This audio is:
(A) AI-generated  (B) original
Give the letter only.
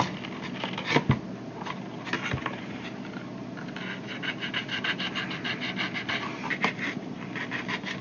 B